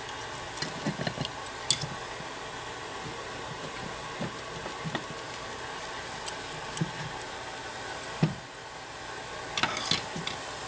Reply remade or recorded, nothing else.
recorded